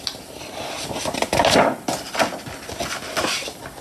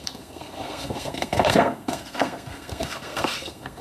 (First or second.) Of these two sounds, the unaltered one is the first